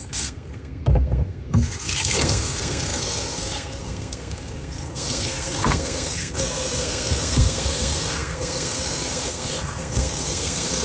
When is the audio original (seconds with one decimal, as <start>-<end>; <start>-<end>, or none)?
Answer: none